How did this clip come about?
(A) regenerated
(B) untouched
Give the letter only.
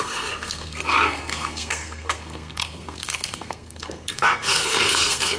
A